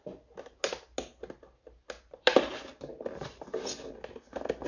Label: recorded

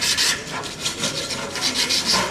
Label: recorded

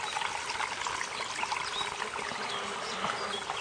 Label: recorded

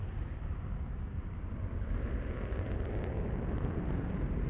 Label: recorded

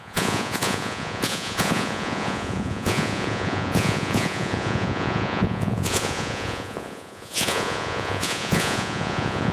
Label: remade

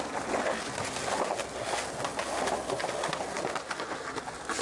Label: recorded